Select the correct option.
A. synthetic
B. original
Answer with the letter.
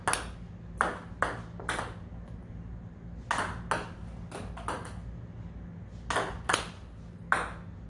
B